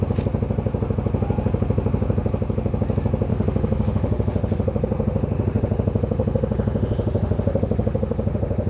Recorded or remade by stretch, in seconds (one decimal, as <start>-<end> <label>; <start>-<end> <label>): 0.0-3.3 recorded; 3.3-8.7 remade